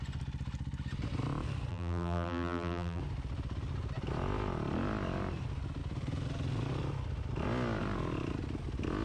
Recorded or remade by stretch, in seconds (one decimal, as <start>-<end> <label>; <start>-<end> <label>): 0.0-1.7 recorded; 1.7-3.0 remade; 3.0-9.0 recorded